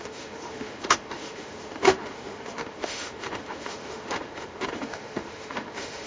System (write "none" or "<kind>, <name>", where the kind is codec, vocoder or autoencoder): autoencoder, DAC-VAE